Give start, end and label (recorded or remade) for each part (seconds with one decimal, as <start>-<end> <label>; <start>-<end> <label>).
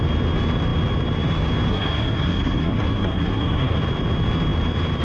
0.0-1.7 recorded; 1.7-3.8 remade; 3.8-5.0 recorded